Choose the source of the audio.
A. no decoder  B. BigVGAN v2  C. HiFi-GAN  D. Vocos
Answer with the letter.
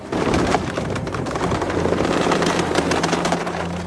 B